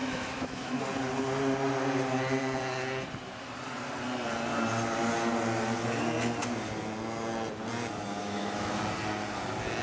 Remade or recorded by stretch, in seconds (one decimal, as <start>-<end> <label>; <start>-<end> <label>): 0.0-0.8 remade; 0.8-8.2 recorded; 8.2-8.8 remade; 8.8-9.8 recorded